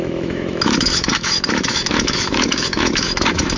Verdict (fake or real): fake